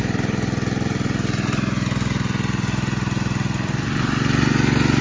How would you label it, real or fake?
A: real